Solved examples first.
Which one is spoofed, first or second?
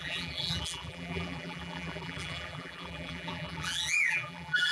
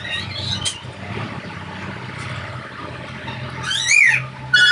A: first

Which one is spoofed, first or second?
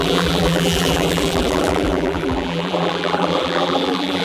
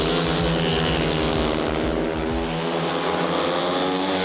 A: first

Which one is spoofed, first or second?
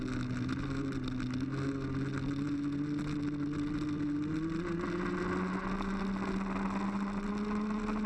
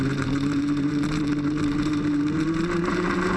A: second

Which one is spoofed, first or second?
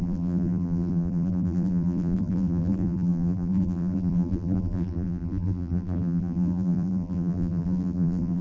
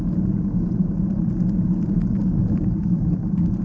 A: first